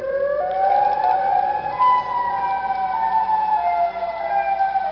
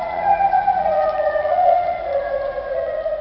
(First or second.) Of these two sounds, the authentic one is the first